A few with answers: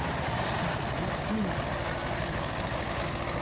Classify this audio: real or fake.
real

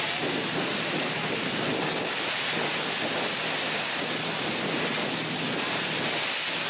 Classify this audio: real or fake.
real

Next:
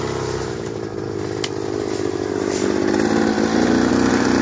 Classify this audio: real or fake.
real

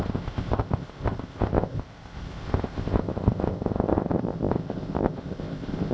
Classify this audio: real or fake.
fake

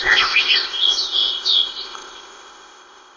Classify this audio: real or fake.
fake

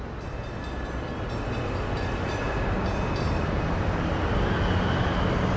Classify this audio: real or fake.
real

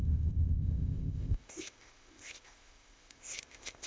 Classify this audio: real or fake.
fake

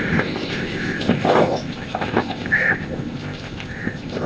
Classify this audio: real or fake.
fake